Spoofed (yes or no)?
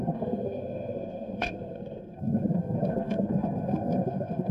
yes